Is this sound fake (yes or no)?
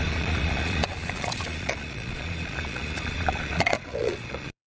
yes